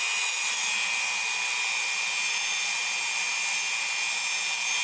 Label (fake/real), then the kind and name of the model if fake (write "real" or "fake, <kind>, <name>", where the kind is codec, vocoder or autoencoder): real